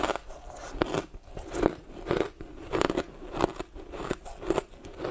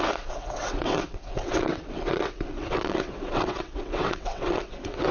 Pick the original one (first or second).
first